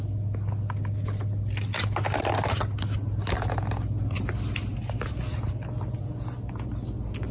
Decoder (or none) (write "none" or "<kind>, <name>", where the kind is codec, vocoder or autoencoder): none